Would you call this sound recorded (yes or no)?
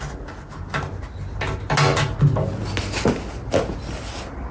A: yes